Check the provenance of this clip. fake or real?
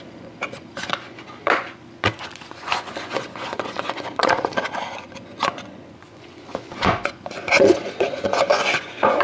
fake